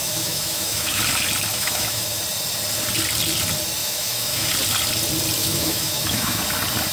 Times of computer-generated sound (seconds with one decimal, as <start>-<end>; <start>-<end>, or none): 0.0-1.0; 1.5-2.2; 3.8-4.5; 5.4-6.4